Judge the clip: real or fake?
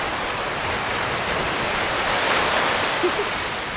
real